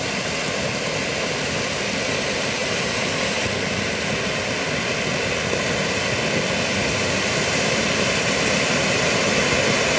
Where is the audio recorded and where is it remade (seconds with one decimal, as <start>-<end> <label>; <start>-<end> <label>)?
0.0-10.0 recorded